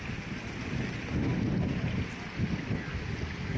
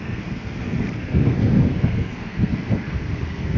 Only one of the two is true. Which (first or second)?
first